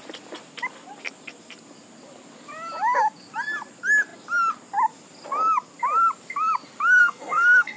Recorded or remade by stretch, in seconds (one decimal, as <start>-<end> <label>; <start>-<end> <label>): 0.0-7.0 recorded; 7.0-7.8 remade